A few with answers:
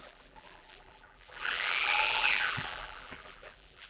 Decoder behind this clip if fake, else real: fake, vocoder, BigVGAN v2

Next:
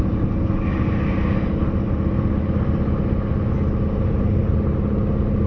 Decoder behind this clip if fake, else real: real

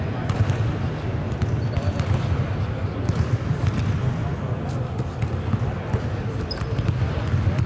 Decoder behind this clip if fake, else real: real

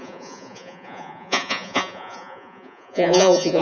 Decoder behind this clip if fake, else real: fake, vocoder, Vocos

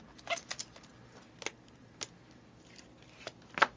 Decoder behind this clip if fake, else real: real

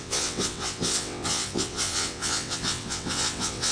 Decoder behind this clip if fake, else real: fake, vocoder, WaveNeXt